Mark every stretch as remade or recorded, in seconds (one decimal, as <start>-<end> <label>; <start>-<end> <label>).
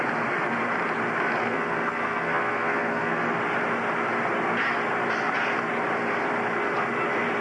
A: 0.0-1.4 recorded; 1.4-3.4 remade; 3.4-7.4 recorded